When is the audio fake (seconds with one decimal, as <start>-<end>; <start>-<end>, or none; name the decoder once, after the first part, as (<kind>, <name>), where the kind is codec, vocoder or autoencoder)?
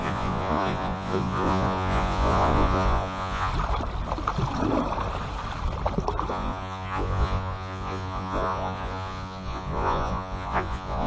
0.0-3.5 (vocoder, Vocos); 6.3-11.1